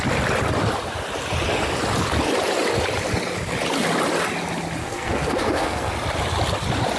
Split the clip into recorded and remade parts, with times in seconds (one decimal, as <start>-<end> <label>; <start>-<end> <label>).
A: 0.0-4.8 recorded; 4.8-5.9 remade; 5.9-7.0 recorded